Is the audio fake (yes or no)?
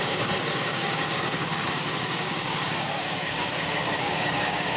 yes